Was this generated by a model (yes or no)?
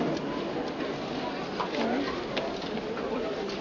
no